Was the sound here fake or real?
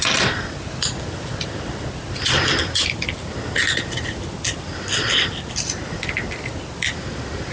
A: real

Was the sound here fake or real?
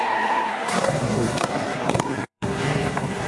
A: fake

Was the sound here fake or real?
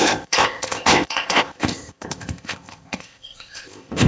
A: fake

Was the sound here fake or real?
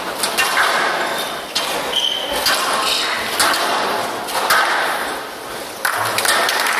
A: real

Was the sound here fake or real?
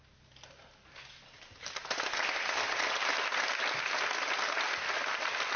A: real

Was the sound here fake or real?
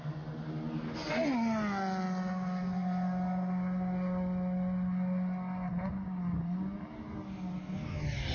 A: real